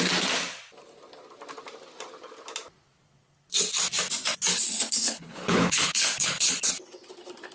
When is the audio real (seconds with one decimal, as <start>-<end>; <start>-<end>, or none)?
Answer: 0.0-4.5; 6.7-7.5